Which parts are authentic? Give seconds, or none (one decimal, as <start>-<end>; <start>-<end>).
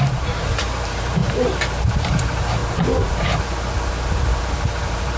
2.6-4.4